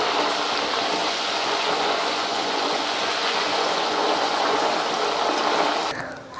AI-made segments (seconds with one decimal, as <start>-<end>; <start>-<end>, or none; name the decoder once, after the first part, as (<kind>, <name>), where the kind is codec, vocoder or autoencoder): 1.0-4.8 (vocoder, Vocos)